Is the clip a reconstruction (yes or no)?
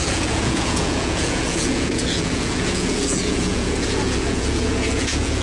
yes